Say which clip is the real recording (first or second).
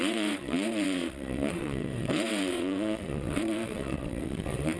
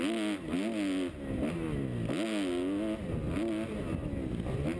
second